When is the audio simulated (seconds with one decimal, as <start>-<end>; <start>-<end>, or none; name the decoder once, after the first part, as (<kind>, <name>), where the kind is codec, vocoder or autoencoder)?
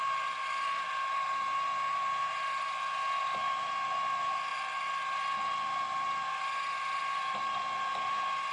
none